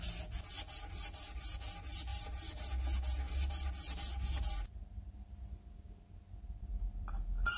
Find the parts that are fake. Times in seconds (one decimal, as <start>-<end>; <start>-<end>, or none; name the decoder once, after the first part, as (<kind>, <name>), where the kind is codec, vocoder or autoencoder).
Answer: 2.1-2.7 (vocoder, BigVGAN v2)